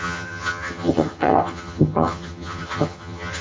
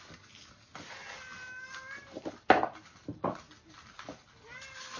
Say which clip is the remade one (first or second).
first